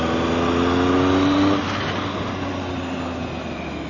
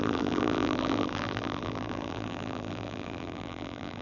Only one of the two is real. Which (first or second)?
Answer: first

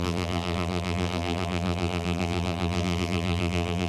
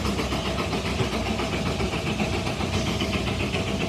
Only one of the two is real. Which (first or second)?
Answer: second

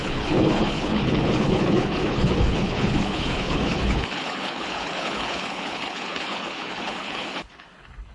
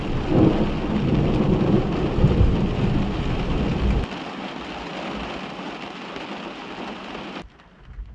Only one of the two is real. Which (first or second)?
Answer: second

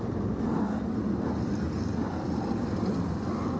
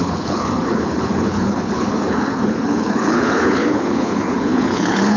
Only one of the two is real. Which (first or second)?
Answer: first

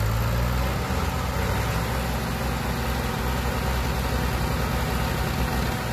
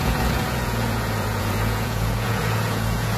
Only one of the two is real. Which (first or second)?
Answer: first